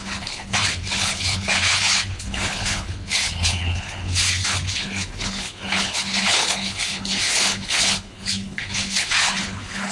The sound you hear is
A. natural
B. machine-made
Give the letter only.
B